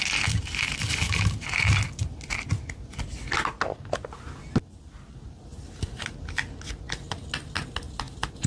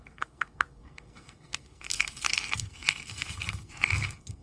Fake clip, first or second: second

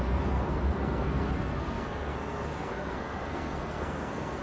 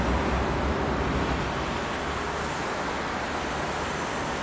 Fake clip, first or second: first